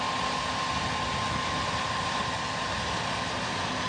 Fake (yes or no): no